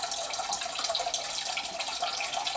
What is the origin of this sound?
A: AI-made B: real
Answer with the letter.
B